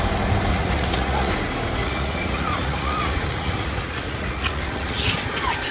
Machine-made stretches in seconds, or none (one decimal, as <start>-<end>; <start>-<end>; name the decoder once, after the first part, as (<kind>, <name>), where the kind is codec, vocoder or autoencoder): 0.5-1.3 (vocoder, Vocos); 1.8-5.1